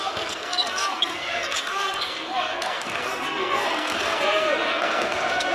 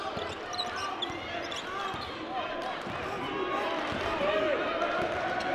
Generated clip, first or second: first